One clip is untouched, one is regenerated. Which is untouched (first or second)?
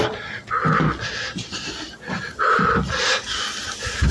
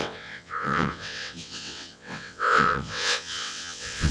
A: first